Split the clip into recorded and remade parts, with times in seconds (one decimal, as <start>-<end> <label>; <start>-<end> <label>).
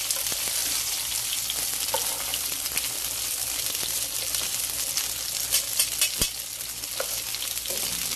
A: 0.0-0.6 recorded; 0.6-1.1 remade; 1.1-2.3 recorded; 2.3-4.5 remade; 4.5-8.2 recorded